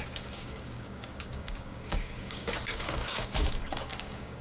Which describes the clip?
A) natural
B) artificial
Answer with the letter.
B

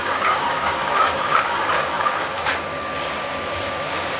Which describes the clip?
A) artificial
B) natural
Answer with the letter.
A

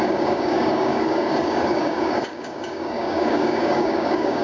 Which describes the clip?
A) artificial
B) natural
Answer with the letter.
A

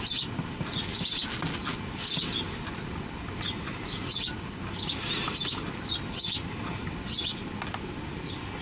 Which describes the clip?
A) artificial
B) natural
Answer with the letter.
B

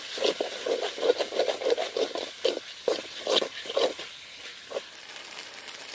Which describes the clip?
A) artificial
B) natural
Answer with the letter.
B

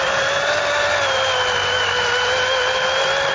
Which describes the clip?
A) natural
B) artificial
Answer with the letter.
A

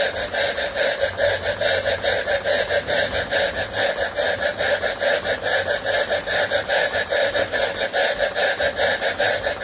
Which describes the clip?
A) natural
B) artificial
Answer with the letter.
A